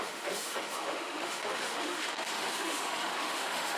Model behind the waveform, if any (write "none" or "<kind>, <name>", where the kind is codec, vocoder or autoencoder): autoencoder, DAC-VAE